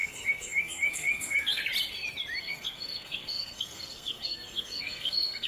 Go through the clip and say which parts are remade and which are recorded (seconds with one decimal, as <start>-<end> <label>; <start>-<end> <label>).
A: 0.0-1.6 remade; 1.6-2.4 recorded; 2.4-5.5 remade